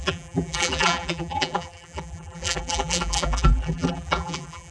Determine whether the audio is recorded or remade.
remade